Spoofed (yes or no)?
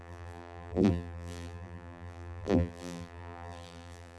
yes